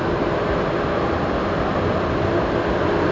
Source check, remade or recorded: remade